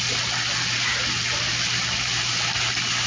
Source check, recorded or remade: recorded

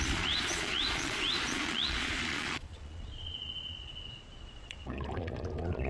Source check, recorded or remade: remade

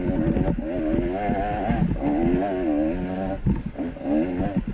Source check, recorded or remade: recorded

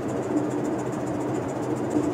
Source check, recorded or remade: recorded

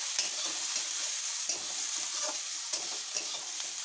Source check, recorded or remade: recorded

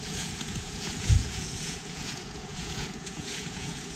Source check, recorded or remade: remade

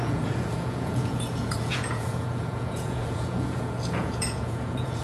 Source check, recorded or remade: remade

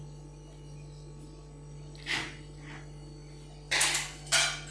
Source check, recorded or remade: recorded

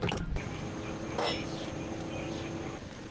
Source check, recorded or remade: recorded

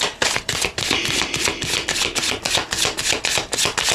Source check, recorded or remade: recorded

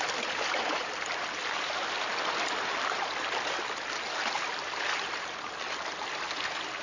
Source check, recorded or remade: recorded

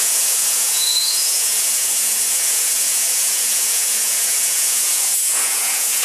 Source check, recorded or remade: remade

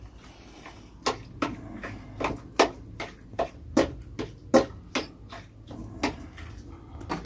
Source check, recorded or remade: recorded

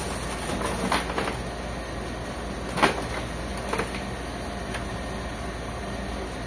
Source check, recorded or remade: recorded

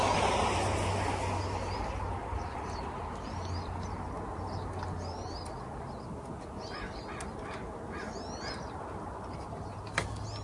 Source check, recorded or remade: recorded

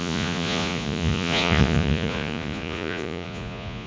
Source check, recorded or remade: remade